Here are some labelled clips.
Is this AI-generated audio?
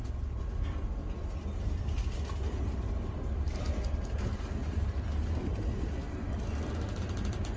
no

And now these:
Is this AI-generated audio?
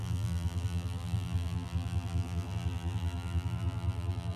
yes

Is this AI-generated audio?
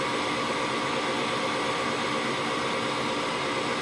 no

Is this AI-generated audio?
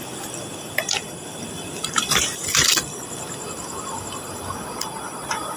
no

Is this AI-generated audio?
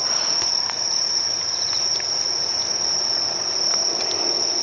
no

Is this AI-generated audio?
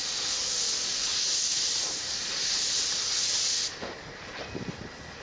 no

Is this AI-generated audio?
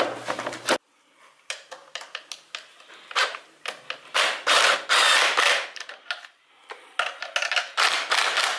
no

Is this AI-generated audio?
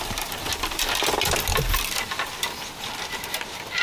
no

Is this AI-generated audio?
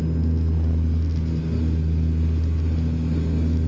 no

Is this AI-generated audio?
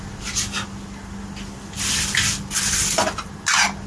no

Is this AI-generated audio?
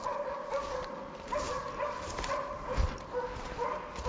no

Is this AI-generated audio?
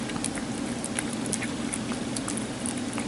no